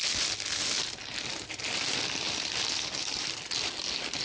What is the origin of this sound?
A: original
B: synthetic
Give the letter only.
A